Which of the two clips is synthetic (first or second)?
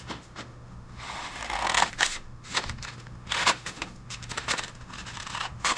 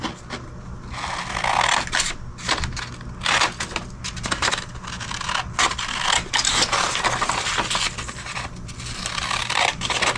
first